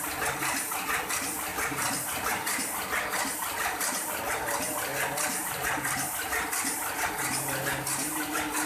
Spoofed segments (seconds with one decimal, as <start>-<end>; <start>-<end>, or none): 1.5-2.6